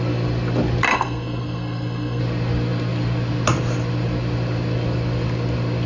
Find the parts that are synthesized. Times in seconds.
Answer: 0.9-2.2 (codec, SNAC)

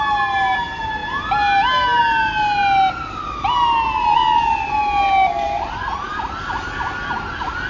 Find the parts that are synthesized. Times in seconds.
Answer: none

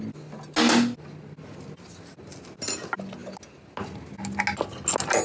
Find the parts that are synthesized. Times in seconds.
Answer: none